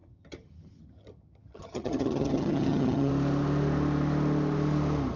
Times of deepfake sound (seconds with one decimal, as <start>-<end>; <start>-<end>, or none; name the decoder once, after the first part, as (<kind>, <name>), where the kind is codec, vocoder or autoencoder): 0.0-3.1 (vocoder, HiFi-GAN)